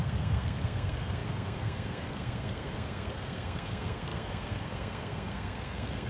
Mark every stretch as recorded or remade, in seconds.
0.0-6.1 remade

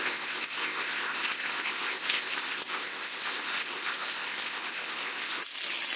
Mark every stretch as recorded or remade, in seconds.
0.0-5.4 remade; 5.4-6.0 recorded

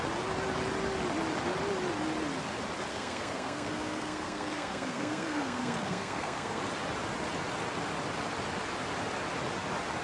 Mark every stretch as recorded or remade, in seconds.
0.0-2.9 recorded; 2.9-6.6 remade; 6.6-10.0 recorded

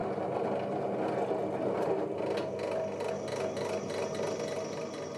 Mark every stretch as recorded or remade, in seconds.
0.0-5.2 recorded

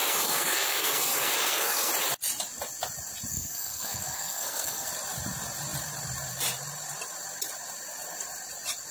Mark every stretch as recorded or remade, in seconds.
0.0-1.9 remade; 1.9-3.3 recorded; 3.3-4.9 remade; 4.9-8.9 recorded